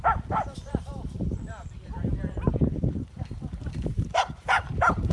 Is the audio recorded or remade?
remade